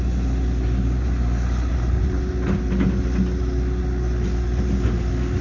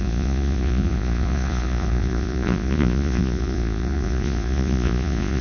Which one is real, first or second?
first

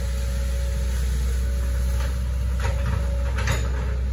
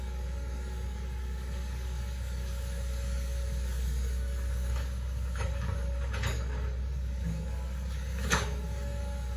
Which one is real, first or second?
first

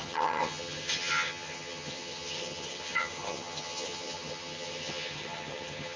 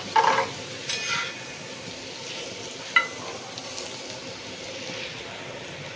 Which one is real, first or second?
second